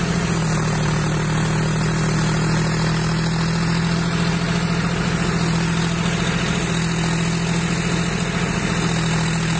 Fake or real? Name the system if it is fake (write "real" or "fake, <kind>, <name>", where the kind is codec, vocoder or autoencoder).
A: real